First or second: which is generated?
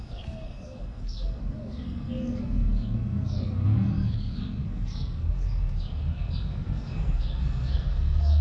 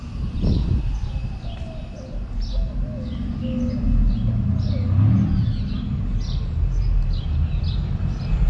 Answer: first